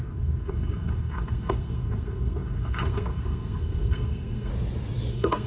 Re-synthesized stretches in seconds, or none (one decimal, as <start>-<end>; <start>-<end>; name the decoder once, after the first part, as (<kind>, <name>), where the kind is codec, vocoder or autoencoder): 0.0-4.5 (codec, SNAC); 5.1-5.5